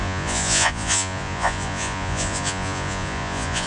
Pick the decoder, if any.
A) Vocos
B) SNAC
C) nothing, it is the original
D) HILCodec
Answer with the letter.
A